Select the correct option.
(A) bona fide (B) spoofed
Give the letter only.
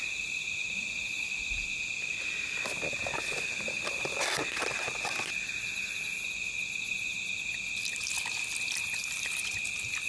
A